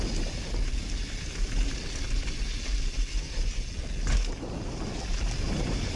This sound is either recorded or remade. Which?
recorded